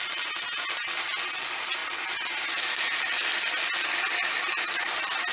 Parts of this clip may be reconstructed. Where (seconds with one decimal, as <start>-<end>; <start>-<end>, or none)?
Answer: none